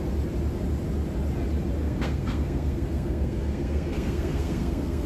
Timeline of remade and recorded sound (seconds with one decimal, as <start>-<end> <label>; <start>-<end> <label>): 0.0-1.8 recorded; 1.8-5.1 remade